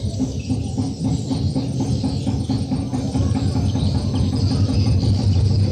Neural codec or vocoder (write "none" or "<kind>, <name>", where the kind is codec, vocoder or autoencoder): none